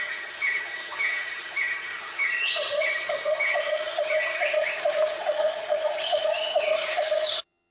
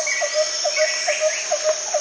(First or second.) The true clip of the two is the second